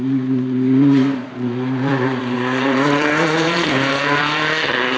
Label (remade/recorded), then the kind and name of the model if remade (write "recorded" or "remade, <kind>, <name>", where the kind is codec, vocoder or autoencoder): remade, vocoder, BigVGAN v2